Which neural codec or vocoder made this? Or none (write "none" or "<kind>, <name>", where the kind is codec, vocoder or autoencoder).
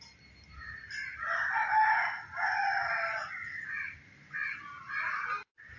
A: none